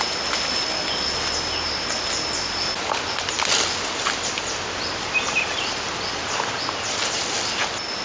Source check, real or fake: real